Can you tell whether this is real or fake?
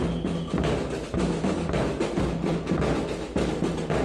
real